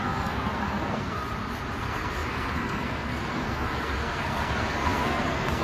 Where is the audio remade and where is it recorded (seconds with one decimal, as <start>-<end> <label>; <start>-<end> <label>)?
0.0-1.2 remade; 1.2-1.8 recorded; 1.8-5.6 remade